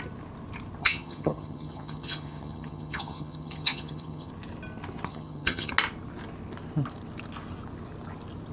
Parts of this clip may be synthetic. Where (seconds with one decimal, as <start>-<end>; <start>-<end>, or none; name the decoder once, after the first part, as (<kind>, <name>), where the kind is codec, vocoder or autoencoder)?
0.8-4.3 (vocoder, HiFi-GAN); 5.1-5.7